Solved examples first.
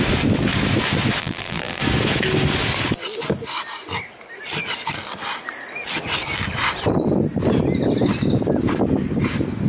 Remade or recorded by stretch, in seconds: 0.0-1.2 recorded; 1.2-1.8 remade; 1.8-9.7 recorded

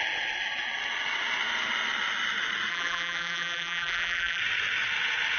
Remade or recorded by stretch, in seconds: 0.0-2.7 recorded; 2.7-4.4 remade; 4.4-5.4 recorded

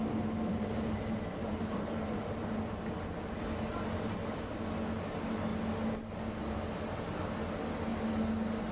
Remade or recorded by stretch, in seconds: 0.0-0.5 recorded; 0.5-2.8 remade; 2.8-8.7 recorded

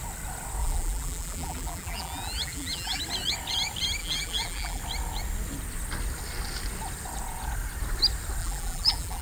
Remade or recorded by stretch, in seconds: 0.0-0.6 recorded; 0.6-3.0 remade; 3.0-4.0 recorded; 4.0-4.8 remade; 4.8-8.4 recorded; 8.4-9.2 remade

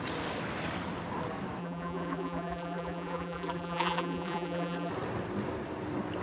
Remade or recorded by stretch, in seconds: 0.0-1.6 recorded; 1.6-4.9 remade; 4.9-6.2 recorded

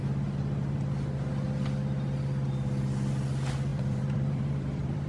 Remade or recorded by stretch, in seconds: 0.0-3.7 recorded; 3.7-5.1 remade

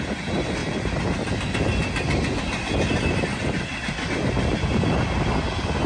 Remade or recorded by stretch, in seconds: 0.0-5.9 recorded

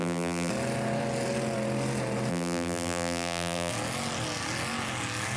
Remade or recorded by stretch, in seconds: 0.0-0.5 remade; 0.5-2.3 recorded; 2.3-3.7 remade; 3.7-5.4 recorded